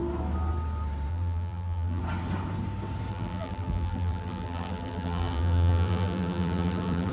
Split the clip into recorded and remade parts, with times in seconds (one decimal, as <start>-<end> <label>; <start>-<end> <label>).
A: 0.0-1.1 recorded; 1.1-2.0 remade; 2.0-3.1 recorded; 3.1-7.1 remade